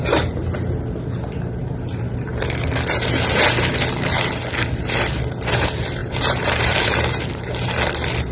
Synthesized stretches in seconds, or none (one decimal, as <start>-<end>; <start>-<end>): 6.0-7.7